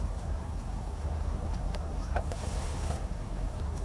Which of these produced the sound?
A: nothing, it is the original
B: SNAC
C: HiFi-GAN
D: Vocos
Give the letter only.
B